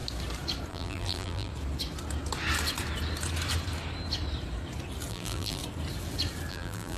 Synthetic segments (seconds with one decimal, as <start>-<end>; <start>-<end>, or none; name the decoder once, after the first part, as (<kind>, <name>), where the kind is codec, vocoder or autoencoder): 0.7-1.5 (vocoder, BigVGAN v2); 5.1-5.6; 6.5-7.0